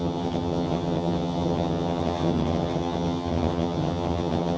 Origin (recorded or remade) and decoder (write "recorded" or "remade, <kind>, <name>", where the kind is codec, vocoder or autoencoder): remade, vocoder, HiFi-GAN